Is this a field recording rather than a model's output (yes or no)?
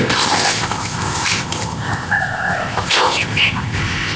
no